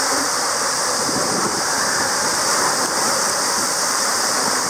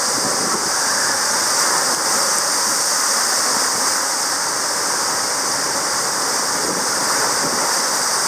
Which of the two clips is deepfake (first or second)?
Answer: first